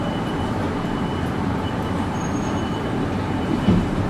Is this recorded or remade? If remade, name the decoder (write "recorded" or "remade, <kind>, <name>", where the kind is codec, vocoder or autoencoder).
remade, vocoder, BigVGAN v2